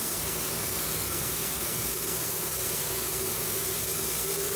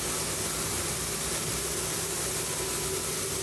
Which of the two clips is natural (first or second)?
second